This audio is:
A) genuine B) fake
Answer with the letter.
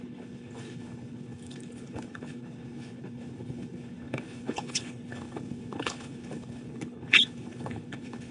B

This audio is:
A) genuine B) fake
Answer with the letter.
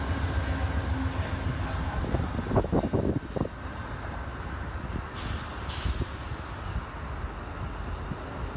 A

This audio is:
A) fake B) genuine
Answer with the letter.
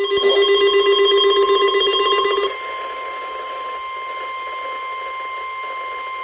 B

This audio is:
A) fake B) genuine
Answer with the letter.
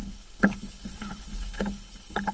A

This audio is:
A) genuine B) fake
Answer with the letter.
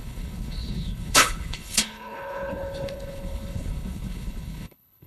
B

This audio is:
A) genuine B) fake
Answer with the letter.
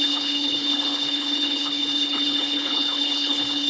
B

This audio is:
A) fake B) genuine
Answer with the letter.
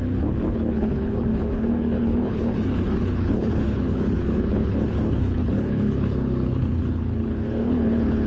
A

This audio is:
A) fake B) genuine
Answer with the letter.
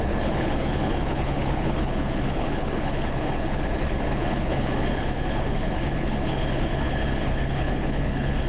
A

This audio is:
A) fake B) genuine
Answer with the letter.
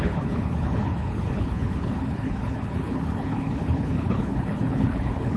A